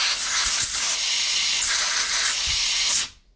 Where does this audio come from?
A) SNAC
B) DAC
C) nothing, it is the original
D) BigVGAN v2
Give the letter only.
C